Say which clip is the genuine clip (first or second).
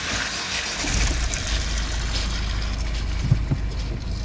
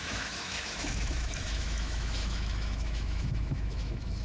first